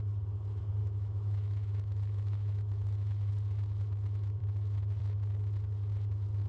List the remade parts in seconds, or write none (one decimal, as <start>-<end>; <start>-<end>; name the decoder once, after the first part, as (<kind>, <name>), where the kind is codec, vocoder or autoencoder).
0.8-3.3 (autoencoder, DAC-VAE)